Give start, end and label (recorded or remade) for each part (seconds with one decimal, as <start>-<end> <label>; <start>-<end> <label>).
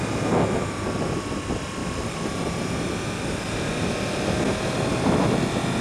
0.0-5.8 recorded